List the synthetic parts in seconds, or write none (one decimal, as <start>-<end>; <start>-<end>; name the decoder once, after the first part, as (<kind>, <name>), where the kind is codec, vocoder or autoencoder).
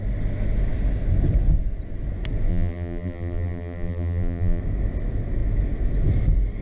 2.5-4.6 (vocoder, BigVGAN v2)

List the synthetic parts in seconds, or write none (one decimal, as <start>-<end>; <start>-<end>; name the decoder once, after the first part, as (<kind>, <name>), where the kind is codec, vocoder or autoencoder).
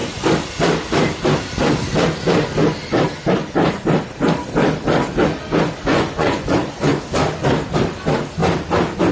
5.9-7.0 (vocoder, Vocos)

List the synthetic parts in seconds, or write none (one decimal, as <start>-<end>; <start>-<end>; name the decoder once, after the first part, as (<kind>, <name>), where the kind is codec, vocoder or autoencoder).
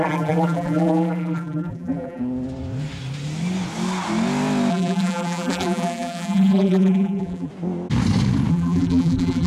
0.0-2.2 (vocoder, BigVGAN v2); 4.7-7.5; 8.5-9.5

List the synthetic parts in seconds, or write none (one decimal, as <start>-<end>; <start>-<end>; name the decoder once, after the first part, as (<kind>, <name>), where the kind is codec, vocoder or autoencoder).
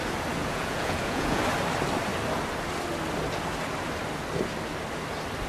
0.4-1.4 (vocoder, Vocos)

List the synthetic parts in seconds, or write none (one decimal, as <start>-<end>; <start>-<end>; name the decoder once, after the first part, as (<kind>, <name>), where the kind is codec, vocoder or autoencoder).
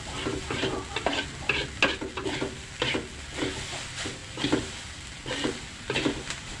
none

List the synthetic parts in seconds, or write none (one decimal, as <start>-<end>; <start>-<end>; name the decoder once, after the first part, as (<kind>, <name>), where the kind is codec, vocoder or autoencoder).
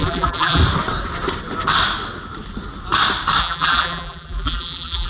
0.0-0.6 (vocoder, BigVGAN v2); 3.4-5.1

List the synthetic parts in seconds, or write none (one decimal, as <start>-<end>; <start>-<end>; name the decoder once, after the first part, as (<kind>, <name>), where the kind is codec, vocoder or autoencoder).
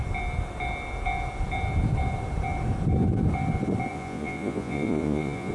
3.9-5.5 (vocoder, Vocos)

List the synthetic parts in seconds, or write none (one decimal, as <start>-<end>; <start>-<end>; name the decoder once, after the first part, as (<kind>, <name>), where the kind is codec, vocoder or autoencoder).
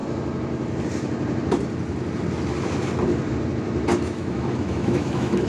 3.9-5.5 (autoencoder, DAC-VAE)